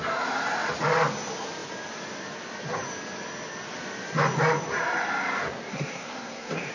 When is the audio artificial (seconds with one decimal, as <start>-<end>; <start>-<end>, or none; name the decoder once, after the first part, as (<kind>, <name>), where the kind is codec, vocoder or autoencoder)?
5.7-6.7 (codec, SNAC)

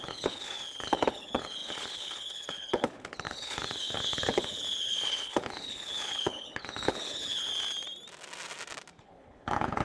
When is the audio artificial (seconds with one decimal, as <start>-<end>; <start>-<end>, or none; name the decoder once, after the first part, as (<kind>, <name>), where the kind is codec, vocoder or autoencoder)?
0.0-7.5 (codec, HILCodec); 9.0-9.8

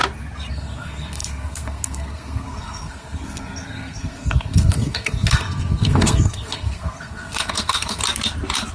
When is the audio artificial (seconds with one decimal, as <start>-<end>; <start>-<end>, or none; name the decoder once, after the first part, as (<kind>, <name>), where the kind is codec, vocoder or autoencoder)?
0.5-8.0 (codec, SNAC)

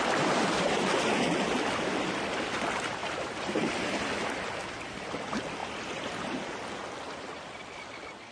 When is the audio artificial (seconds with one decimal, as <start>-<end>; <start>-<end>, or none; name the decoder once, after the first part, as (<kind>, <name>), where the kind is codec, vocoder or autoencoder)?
3.0-4.1 (vocoder, BigVGAN v2); 5.6-6.4

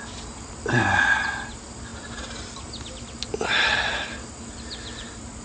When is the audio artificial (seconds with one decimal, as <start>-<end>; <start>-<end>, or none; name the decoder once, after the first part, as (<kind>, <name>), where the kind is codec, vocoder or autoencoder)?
none

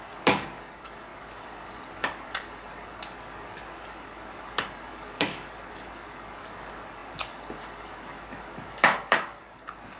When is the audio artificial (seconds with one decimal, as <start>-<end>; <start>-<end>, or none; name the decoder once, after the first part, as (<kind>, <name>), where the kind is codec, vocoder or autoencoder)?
0.0-10.0 (codec, DAC)

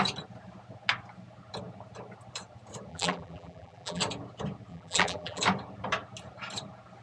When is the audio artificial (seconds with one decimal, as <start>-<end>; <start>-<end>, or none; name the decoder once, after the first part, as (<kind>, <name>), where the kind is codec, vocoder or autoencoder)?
2.9-4.0 (vocoder, BigVGAN v2); 4.7-5.4